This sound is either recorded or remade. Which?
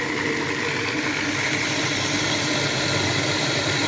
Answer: recorded